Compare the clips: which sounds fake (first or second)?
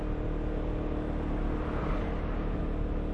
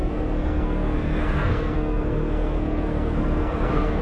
second